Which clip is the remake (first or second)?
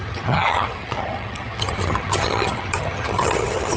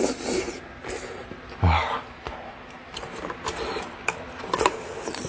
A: first